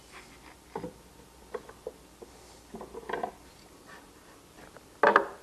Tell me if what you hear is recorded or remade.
recorded